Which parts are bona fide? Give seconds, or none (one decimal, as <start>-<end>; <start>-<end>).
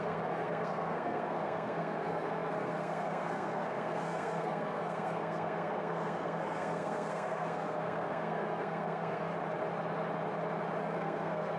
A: 9.3-10.8